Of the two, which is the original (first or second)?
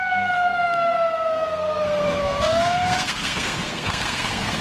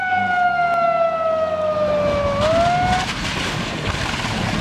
second